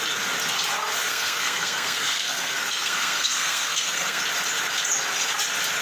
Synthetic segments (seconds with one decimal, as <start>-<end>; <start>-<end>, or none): 1.1-4.2